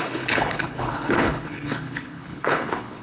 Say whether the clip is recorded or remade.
remade